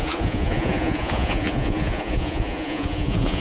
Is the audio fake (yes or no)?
yes